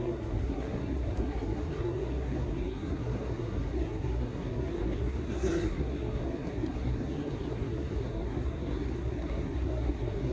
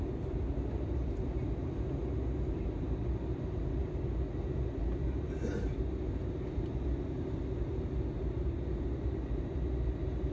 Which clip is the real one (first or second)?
second